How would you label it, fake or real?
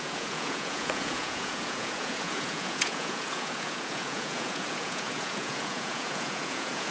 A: fake